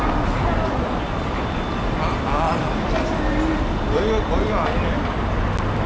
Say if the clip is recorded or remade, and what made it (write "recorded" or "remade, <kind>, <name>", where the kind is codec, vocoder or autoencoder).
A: recorded